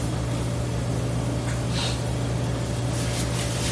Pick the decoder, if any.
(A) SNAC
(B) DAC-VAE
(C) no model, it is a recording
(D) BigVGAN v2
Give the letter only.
C